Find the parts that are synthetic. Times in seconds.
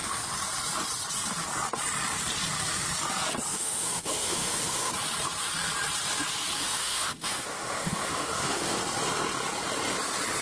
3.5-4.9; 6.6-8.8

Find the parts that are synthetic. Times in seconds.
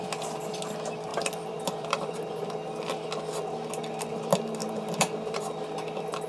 1.1-2.3; 4.6-5.4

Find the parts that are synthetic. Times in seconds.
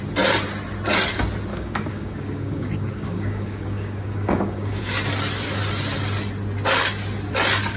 1.5-4.8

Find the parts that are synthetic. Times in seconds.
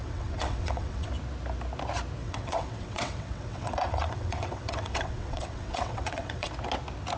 0.0-1.1; 2.2-6.5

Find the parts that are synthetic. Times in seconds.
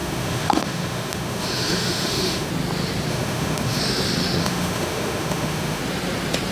0.0-2.5; 3.1-3.8; 4.4-5.8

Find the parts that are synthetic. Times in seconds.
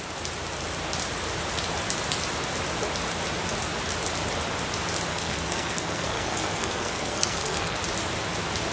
5.1-7.8